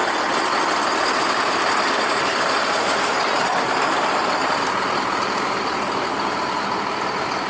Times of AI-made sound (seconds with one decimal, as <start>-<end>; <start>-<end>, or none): none